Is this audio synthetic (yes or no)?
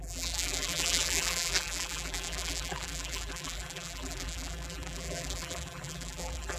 yes